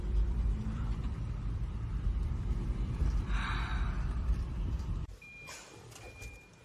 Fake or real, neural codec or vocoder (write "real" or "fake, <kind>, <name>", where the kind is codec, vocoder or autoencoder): fake, vocoder, BigVGAN v2